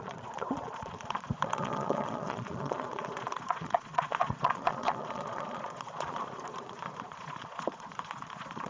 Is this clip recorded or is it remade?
remade